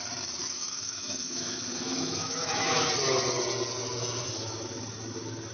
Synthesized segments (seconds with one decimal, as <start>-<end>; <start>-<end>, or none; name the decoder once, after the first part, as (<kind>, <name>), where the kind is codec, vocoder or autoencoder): 0.4-2.9 (autoencoder, DAC-VAE)